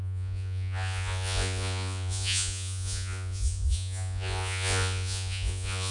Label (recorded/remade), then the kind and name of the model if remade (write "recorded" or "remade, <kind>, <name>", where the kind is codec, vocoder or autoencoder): remade, vocoder, Vocos